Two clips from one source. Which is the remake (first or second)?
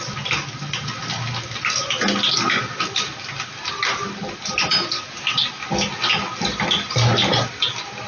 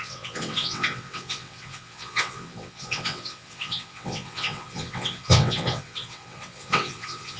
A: second